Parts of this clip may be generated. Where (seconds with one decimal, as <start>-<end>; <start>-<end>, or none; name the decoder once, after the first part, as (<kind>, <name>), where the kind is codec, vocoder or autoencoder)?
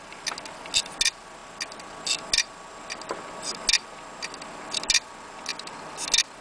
5.5-6.0 (vocoder, BigVGAN v2)